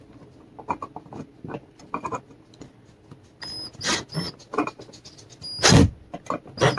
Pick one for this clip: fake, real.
real